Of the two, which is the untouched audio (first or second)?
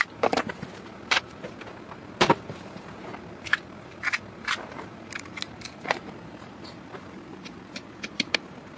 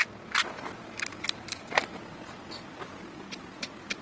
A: second